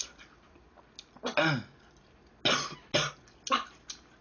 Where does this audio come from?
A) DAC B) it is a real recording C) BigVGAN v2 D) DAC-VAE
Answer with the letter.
B